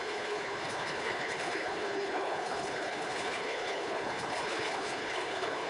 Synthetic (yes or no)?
yes